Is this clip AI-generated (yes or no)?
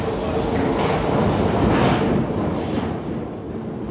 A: no